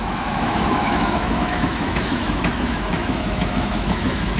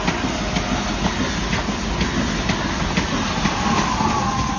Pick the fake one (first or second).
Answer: first